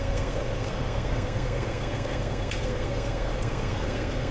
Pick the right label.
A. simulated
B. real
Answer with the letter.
A